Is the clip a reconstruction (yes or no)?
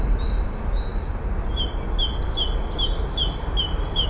no